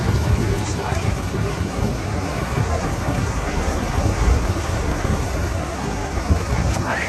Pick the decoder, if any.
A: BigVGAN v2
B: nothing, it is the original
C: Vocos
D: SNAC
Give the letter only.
D